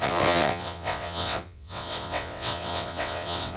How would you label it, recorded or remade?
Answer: remade